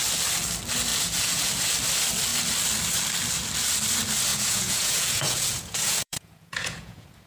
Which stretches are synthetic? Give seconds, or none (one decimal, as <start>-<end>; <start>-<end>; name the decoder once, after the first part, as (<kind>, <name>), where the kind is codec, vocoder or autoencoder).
0.9-1.5 (vocoder, Vocos); 4.3-7.3